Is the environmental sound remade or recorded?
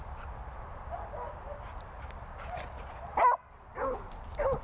recorded